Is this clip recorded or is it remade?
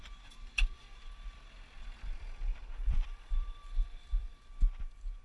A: remade